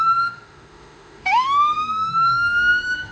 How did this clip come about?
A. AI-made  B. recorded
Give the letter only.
A